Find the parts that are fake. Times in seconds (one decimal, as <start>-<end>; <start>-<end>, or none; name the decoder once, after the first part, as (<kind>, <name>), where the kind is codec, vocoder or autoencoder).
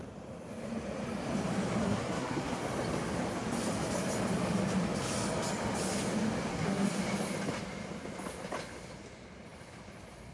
1.8-2.6 (codec, SNAC); 6.5-7.0